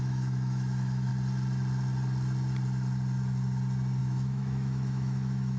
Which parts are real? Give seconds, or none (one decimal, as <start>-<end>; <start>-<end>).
1.1-4.0